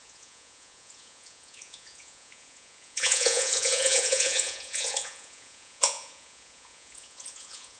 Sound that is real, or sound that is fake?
fake